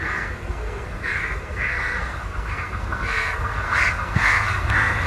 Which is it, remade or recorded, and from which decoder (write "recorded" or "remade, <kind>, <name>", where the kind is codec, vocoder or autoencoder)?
remade, codec, SNAC